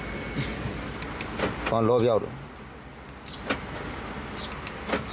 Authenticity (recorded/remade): recorded